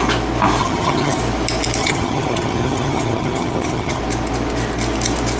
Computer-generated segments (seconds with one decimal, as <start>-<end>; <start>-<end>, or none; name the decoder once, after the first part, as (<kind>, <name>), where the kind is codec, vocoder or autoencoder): 0.6-1.2 (vocoder, HiFi-GAN); 1.8-4.0